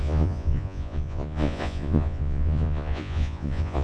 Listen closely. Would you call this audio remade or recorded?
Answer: remade